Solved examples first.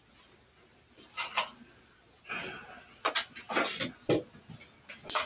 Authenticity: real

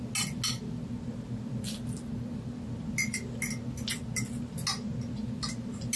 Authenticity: real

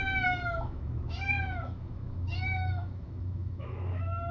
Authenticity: fake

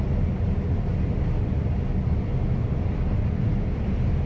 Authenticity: real